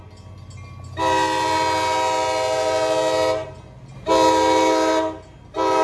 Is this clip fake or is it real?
real